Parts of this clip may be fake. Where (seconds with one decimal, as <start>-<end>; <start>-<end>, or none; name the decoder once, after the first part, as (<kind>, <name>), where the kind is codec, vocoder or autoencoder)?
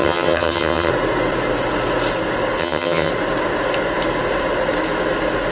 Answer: 0.0-0.9 (vocoder, HiFi-GAN); 2.6-3.1